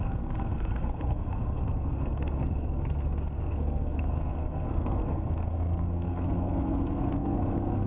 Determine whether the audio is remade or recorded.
remade